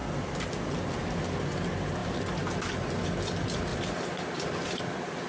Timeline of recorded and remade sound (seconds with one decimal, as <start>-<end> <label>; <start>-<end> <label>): 0.0-2.0 recorded; 2.0-2.5 remade; 2.5-3.7 recorded; 3.7-4.8 remade; 4.8-5.3 recorded